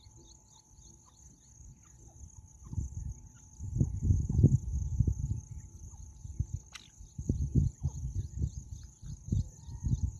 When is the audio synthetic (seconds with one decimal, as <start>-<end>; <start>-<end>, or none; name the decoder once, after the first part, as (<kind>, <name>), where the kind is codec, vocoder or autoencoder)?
5.2-10.2 (vocoder, BigVGAN v2)